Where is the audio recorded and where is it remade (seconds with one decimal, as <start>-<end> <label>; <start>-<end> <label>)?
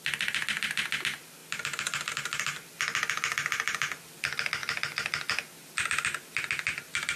0.0-7.2 recorded